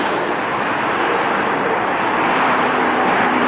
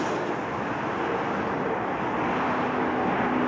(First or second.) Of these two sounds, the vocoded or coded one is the first